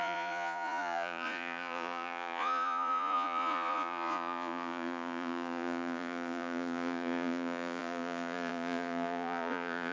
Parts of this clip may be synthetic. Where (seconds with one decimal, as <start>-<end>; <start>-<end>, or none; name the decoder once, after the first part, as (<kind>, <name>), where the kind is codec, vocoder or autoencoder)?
0.0-9.9 (vocoder, Vocos)